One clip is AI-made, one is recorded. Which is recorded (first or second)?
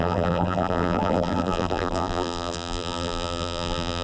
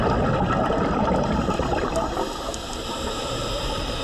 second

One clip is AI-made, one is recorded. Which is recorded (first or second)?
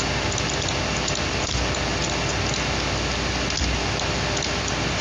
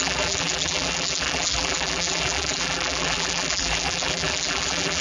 first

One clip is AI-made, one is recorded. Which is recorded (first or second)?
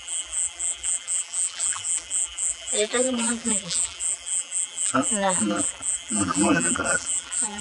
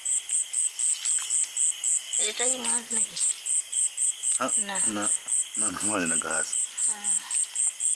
second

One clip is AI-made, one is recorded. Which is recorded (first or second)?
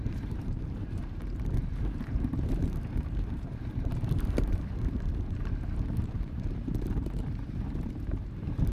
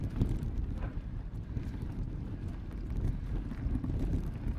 second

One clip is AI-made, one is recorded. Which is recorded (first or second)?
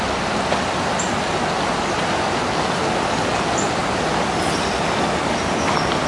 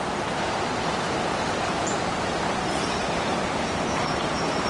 first